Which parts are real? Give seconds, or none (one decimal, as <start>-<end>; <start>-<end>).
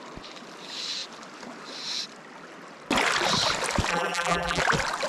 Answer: 0.0-3.9; 4.6-5.1